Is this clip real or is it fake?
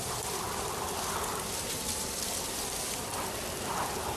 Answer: fake